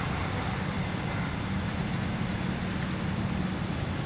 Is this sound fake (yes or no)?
no